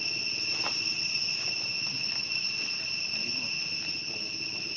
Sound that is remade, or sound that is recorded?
recorded